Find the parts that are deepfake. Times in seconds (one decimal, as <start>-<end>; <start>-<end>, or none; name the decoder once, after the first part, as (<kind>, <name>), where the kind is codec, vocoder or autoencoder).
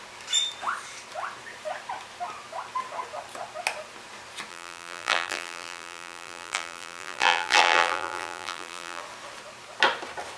4.5-9.0 (vocoder, BigVGAN v2)